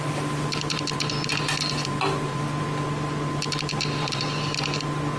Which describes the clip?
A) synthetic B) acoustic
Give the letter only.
A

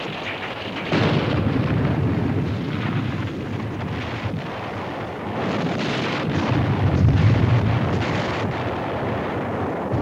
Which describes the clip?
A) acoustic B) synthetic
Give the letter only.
B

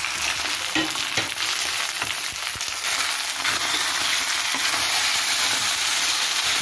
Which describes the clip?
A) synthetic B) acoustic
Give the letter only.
B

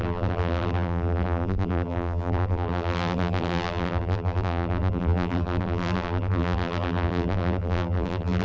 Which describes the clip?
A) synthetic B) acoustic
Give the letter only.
A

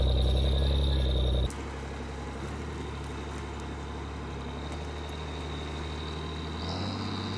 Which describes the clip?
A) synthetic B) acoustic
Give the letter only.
B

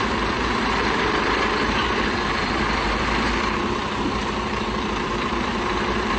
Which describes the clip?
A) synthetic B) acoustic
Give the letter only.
A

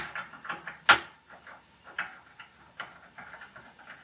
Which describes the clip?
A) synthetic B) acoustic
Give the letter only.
B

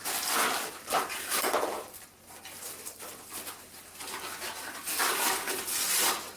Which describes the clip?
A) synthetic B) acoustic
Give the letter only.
B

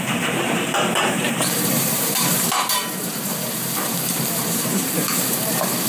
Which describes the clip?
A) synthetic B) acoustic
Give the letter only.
A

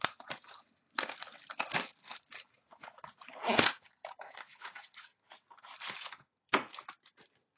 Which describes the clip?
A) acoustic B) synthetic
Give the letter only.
A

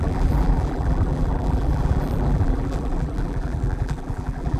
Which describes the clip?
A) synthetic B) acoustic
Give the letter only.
A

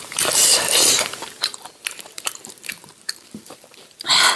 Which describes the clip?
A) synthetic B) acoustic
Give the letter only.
A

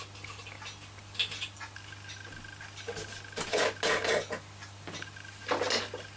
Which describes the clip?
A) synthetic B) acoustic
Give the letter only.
B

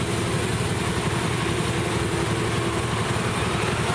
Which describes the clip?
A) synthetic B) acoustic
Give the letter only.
B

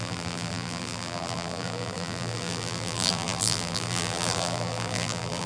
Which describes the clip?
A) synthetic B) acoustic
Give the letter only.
A